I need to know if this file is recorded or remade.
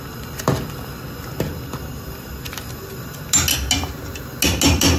recorded